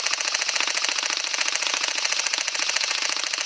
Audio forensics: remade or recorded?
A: recorded